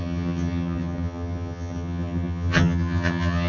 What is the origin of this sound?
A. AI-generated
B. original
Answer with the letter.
A